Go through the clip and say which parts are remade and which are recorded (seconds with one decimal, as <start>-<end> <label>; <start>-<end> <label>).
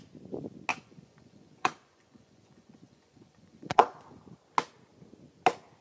0.0-0.7 recorded; 0.7-4.2 remade; 4.2-5.8 recorded